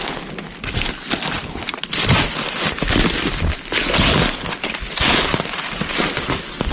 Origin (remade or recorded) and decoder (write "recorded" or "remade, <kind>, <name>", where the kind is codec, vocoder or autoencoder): recorded